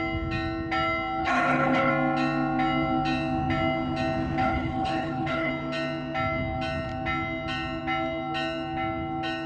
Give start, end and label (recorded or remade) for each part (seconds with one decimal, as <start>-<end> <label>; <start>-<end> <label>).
0.0-1.2 recorded; 1.2-1.9 remade; 1.9-4.4 recorded; 4.4-5.5 remade; 5.5-9.5 recorded